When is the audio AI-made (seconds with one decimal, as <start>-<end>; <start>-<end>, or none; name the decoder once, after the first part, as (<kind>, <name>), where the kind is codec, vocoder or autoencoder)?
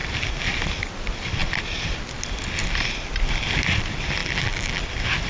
4.2-4.8 (vocoder, BigVGAN v2)